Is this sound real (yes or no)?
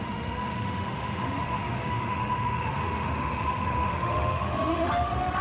no